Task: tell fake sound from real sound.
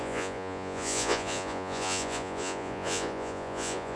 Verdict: fake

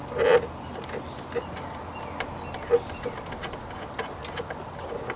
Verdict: real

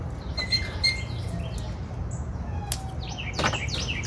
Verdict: real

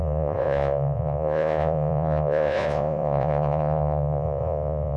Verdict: fake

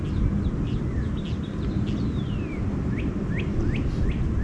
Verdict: real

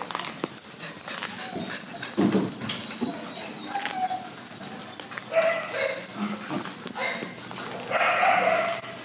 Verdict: real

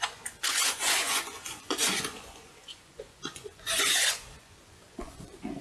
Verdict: fake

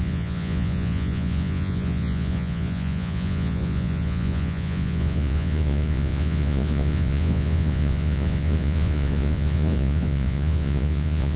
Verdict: fake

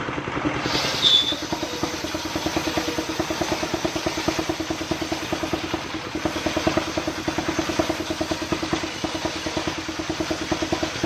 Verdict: real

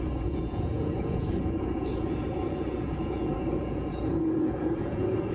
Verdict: fake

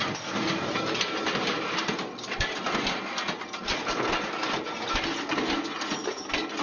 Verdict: real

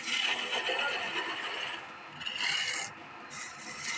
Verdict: real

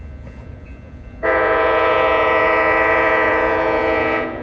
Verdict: fake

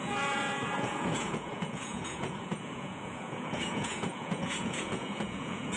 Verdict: fake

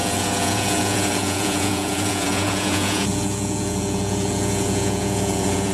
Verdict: fake